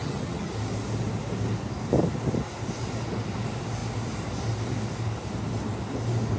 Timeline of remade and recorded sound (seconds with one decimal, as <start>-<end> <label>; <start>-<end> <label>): 0.0-0.5 remade; 0.5-6.4 recorded